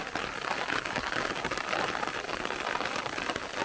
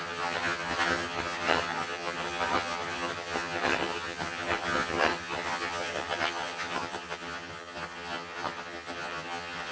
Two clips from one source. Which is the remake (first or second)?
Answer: second